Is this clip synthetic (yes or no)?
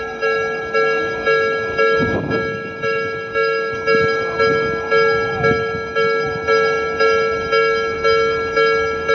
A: yes